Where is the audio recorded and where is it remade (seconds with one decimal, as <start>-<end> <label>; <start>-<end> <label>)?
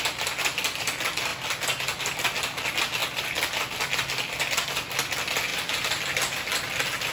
0.0-7.1 recorded